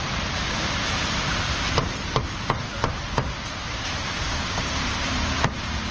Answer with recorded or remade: remade